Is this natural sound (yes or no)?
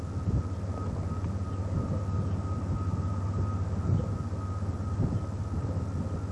yes